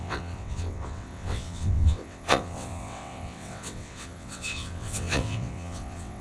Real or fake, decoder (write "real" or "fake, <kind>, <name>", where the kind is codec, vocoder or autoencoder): fake, vocoder, WaveNeXt